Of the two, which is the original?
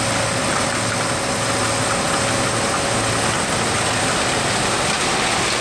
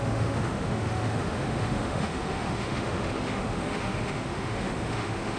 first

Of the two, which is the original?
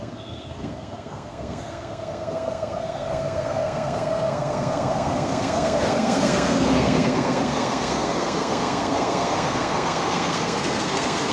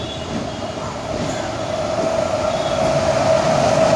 second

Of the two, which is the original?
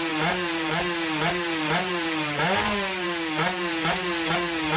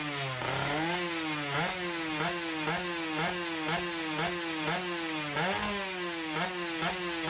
second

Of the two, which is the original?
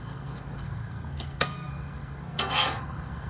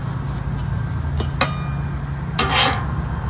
second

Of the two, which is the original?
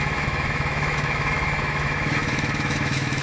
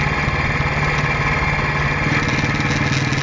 second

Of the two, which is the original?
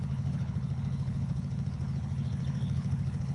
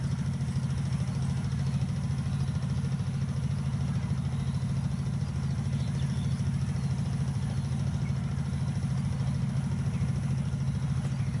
second